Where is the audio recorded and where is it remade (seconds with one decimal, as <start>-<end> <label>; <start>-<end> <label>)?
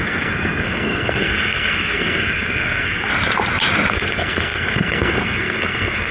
0.0-3.1 remade; 3.1-3.9 recorded; 3.9-6.1 remade